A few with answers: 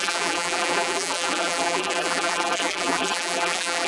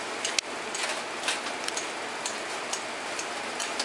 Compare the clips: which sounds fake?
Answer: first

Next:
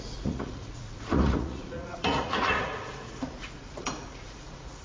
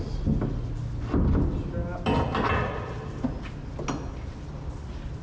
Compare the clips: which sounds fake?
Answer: first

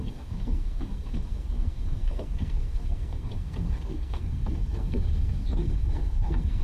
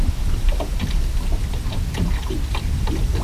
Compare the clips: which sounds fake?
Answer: first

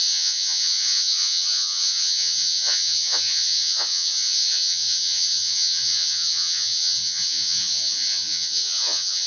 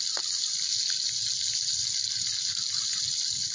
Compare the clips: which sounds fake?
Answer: first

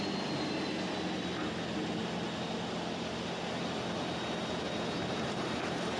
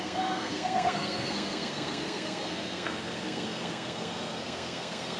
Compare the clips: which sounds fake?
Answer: second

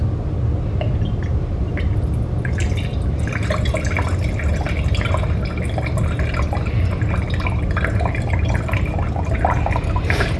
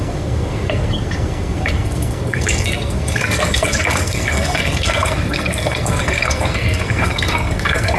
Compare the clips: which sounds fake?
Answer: second